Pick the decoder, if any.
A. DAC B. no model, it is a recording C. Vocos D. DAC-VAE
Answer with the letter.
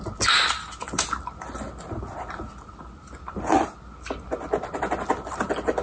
B